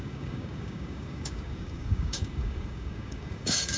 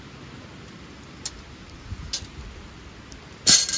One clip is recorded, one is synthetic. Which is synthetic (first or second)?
first